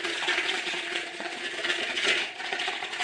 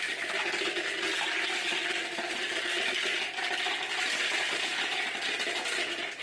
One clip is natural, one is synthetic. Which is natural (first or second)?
second